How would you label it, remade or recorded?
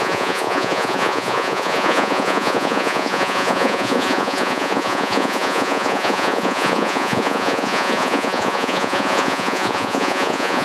remade